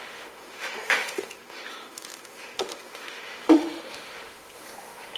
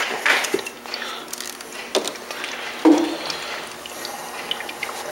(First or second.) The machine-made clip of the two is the first